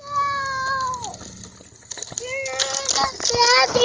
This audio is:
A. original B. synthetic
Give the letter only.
A